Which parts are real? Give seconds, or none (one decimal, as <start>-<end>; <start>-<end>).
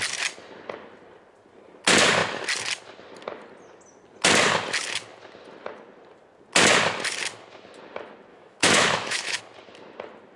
0.0-8.3; 9.4-10.4